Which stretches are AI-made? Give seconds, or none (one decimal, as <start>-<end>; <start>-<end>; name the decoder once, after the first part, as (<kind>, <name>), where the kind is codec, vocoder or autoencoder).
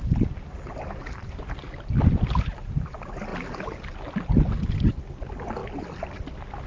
none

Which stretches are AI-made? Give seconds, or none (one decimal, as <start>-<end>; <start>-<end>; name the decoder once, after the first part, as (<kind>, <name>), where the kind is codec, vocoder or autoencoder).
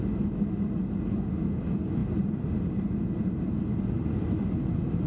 none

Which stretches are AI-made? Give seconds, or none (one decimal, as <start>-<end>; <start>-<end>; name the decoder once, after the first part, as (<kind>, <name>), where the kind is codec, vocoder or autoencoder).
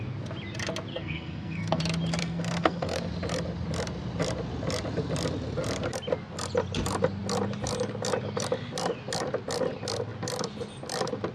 0.9-1.8 (codec, SNAC); 2.2-3.0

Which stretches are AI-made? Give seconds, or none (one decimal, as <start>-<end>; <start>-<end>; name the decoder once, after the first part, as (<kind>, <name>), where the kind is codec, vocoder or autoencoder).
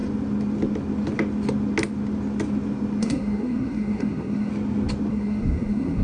3.0-4.5 (codec, SNAC); 5.1-6.0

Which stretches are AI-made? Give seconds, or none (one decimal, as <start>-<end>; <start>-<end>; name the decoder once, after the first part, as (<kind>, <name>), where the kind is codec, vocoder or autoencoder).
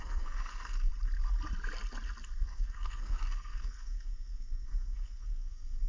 0.0-0.9 (codec, SNAC); 2.4-5.9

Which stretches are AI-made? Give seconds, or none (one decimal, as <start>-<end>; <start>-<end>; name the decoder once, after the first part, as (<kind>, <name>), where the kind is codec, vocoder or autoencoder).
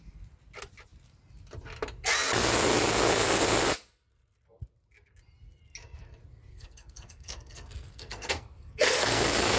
6.5-9.2 (codec, SNAC)